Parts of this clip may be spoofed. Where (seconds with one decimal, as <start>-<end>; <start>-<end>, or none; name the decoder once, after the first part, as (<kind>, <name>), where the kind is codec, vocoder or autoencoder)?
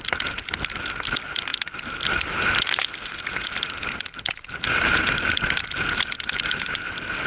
none